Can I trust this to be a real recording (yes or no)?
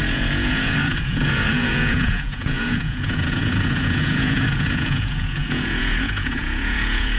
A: no